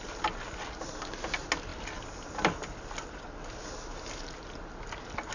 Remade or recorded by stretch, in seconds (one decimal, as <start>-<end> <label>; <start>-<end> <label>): 0.0-5.3 recorded